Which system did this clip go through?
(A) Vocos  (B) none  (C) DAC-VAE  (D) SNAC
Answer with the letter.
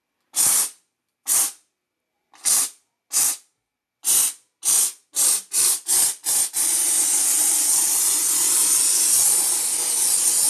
B